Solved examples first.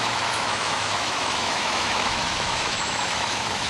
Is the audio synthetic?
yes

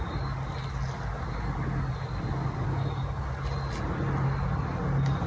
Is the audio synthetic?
no